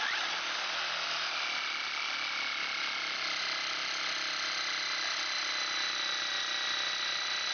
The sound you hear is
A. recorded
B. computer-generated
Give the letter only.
A